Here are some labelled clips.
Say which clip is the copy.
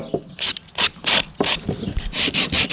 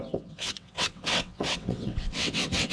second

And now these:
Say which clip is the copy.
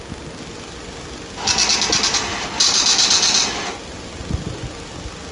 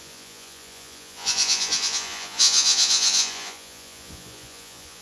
second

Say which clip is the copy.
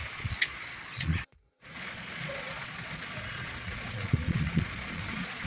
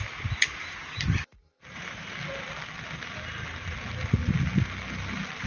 first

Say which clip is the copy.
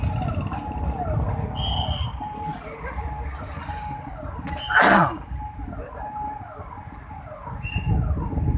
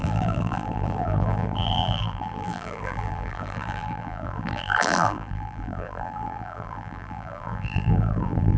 second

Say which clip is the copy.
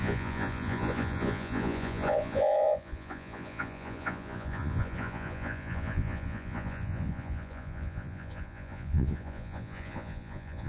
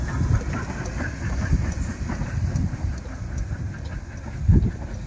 first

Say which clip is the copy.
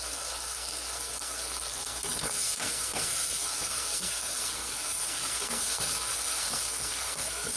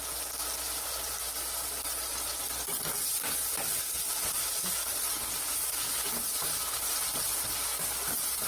first